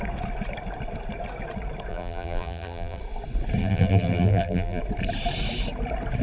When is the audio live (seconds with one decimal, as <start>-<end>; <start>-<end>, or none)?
0.0-1.9; 3.0-3.6; 4.8-6.2